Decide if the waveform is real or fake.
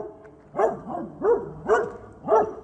real